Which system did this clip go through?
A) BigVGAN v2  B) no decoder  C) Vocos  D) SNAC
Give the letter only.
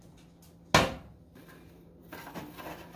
B